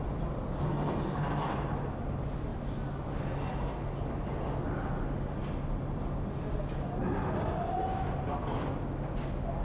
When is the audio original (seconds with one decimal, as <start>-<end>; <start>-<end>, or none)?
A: 0.0-9.6